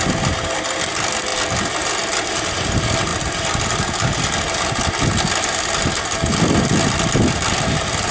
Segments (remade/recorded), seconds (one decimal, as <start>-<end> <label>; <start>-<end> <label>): 0.0-8.1 recorded